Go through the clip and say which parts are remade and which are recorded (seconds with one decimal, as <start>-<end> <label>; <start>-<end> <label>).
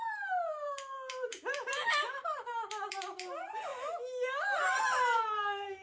0.0-1.3 remade; 1.3-2.1 recorded; 2.1-3.7 remade; 3.7-4.7 recorded; 4.7-5.8 remade